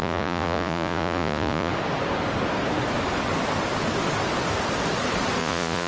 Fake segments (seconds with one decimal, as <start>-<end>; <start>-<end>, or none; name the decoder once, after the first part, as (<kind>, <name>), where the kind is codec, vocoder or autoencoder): 0.0-1.7 (vocoder, Vocos); 5.4-5.9

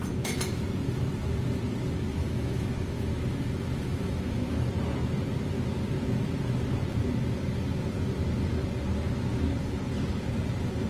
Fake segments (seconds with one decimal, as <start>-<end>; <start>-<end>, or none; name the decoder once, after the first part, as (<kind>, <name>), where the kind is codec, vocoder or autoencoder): 2.1-4.7 (autoencoder, DAC-VAE)

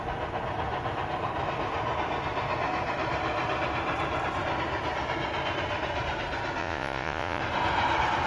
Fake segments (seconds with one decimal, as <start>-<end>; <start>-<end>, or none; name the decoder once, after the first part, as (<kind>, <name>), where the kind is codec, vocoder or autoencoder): 6.6-7.4 (vocoder, Vocos)

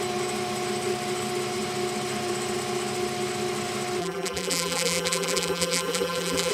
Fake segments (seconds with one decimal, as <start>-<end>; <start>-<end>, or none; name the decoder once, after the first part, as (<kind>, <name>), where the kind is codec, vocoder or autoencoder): 4.0-6.5 (vocoder, BigVGAN v2)

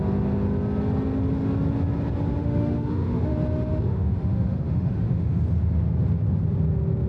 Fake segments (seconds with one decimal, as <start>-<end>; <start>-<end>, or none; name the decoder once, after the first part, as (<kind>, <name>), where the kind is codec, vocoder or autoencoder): 2.4-3.3 (autoencoder, DAC-VAE); 3.9-5.4